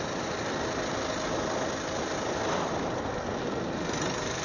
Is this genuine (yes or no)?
yes